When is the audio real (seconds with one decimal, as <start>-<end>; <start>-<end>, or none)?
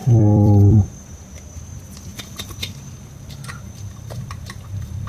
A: 1.4-2.1